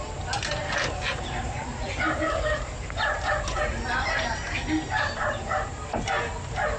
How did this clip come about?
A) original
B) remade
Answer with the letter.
A